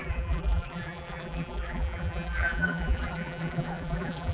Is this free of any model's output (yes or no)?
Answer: no